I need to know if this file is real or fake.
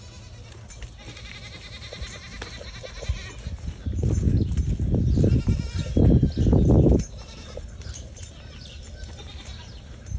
real